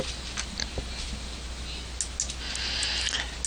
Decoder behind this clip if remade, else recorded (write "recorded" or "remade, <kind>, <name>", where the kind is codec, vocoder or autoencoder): recorded